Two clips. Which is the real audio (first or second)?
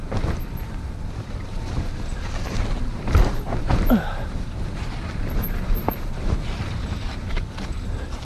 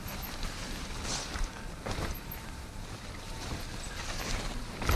second